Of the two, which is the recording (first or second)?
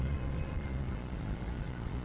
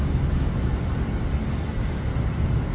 second